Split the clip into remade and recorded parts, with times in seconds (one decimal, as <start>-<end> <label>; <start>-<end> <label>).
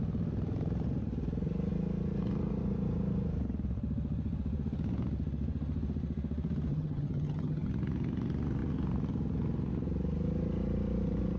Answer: 0.0-6.7 recorded; 6.7-7.7 remade; 7.7-11.4 recorded